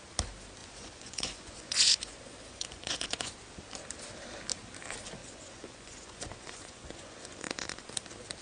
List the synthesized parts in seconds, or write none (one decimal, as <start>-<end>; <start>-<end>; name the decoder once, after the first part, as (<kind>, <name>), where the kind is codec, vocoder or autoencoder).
0.6-3.3 (vocoder, Vocos); 5.2-7.9